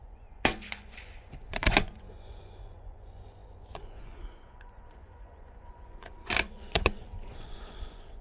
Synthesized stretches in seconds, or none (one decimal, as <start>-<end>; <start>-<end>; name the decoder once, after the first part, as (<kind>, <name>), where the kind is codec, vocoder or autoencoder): 0.0-8.2 (vocoder, Vocos)